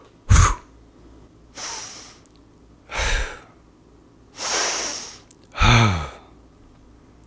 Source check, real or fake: real